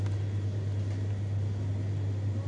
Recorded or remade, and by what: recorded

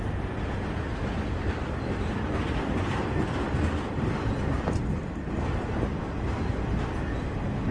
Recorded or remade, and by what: recorded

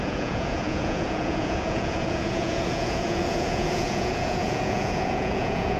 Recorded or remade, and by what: remade, vocoder, Vocos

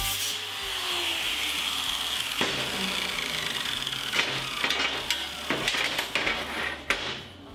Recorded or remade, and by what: recorded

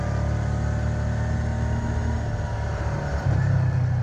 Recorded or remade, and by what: recorded